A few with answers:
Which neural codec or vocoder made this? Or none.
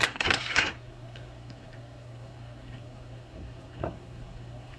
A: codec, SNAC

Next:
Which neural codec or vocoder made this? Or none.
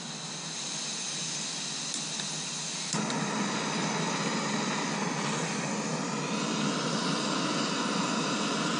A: none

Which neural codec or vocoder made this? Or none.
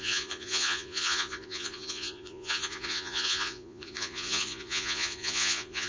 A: vocoder, Vocos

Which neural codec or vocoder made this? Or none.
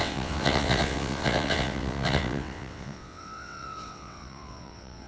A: vocoder, WaveNeXt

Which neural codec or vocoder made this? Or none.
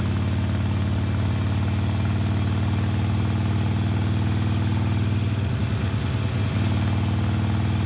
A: none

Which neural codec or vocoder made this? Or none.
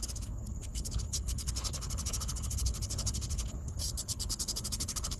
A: codec, HILCodec